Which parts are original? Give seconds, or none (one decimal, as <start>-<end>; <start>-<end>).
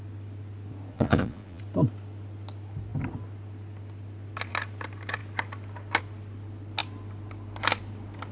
0.0-0.9; 1.6-8.3